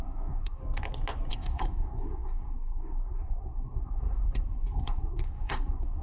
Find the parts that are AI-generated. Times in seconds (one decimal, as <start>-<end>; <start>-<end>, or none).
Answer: 0.0-0.6; 1.3-6.0